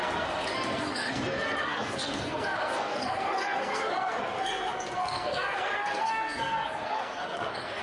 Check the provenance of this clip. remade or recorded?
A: remade